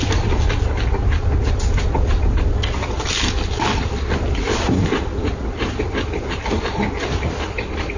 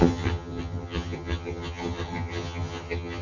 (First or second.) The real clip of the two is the first